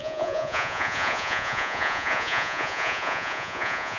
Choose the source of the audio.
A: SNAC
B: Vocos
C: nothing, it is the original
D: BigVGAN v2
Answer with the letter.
B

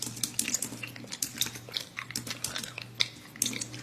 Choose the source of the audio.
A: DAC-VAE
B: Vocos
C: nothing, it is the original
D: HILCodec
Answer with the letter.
C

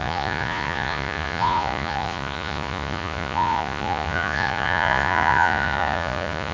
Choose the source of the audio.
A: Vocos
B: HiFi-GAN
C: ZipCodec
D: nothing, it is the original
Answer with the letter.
A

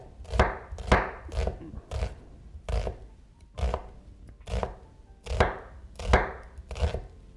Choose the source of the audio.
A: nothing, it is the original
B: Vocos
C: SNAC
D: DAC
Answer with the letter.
A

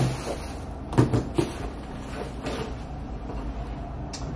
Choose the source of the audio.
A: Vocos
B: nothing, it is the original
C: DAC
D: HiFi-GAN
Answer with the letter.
B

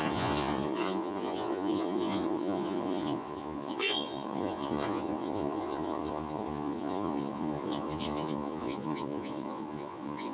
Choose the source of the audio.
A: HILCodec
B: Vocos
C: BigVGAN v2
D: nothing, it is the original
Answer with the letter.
B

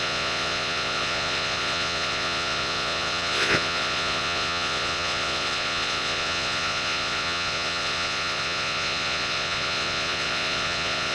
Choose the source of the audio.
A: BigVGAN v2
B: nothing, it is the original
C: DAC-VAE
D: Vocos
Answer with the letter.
D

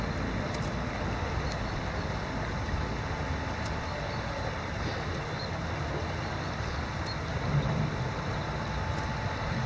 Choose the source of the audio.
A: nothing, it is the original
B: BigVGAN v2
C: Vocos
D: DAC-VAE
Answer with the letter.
A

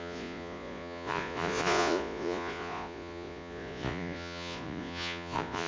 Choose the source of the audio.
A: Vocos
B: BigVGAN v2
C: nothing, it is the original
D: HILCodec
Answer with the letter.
A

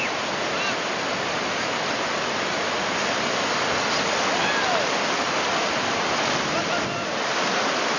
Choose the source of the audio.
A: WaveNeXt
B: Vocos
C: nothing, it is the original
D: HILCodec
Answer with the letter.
C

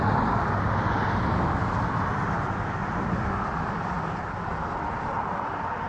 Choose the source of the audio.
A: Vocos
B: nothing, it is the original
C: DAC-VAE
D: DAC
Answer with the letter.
B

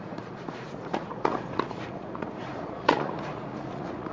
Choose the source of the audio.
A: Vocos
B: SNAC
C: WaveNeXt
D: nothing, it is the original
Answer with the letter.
A